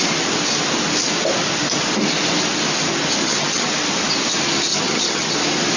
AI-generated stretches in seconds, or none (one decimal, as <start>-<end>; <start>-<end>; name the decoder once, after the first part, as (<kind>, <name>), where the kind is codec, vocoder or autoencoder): 3.2-3.7 (vocoder, HiFi-GAN); 4.7-5.3